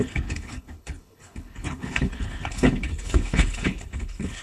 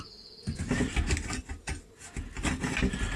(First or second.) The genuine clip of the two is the second